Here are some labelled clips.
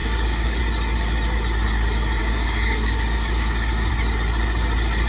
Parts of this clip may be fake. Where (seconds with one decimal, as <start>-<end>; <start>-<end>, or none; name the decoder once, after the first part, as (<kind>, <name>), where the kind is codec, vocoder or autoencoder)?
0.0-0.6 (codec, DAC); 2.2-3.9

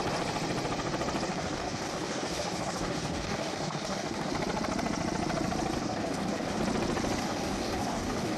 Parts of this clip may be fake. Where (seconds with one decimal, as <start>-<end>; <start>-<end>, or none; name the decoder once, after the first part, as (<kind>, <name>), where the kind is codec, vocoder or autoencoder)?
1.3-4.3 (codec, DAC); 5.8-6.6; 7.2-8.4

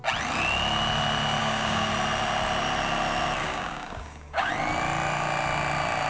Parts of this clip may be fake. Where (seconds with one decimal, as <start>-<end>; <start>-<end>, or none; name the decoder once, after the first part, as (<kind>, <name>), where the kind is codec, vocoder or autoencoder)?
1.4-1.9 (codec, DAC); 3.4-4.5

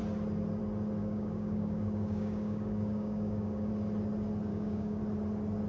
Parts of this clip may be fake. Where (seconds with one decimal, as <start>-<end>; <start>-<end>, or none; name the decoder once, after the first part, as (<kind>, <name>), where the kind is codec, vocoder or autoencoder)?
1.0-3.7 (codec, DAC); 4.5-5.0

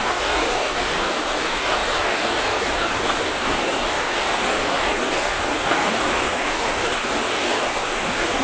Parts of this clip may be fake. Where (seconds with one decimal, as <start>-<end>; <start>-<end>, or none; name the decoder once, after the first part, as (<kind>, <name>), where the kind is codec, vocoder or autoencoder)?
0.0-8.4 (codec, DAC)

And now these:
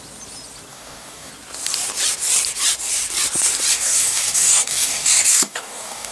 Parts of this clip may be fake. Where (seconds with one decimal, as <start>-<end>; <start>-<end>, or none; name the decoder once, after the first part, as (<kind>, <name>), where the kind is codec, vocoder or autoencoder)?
0.7-1.3 (codec, DAC); 3.7-6.1

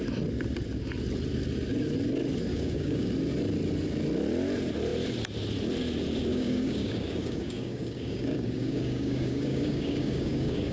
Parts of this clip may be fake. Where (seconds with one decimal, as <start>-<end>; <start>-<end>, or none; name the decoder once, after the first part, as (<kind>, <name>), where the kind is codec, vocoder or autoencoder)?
2.5-3.1 (codec, DAC); 6.3-10.7